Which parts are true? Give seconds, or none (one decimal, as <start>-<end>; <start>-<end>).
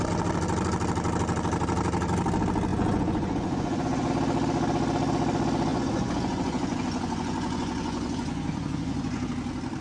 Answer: 0.0-2.7; 4.1-5.7; 9.3-9.8